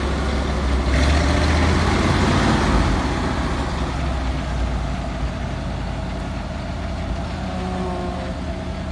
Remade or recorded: recorded